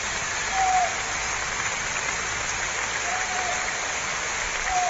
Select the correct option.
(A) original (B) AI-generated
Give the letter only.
B